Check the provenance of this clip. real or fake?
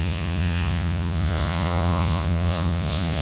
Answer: fake